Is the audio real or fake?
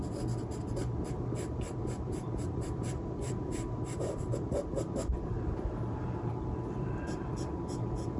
fake